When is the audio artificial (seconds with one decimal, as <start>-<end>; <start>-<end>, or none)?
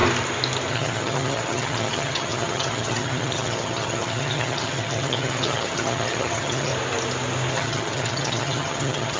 0.7-6.7; 7.5-9.2